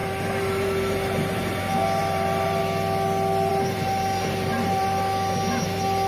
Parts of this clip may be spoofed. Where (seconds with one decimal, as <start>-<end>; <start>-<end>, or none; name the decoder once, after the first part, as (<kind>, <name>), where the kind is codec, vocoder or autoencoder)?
0.0-1.6 (vocoder, BigVGAN v2); 2.0-2.6; 3.5-5.0